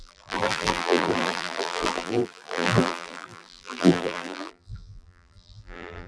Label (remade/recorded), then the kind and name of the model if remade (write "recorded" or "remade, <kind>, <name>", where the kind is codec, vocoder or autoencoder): remade, vocoder, BigVGAN v2